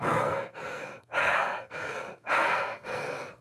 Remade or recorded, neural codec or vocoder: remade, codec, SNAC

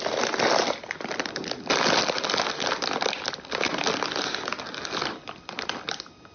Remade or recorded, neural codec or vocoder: recorded